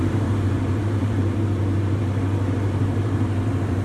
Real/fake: fake